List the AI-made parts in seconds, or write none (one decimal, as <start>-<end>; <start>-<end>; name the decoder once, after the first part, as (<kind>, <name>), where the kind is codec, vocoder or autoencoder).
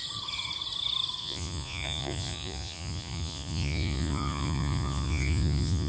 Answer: 1.2-5.9 (vocoder, Vocos)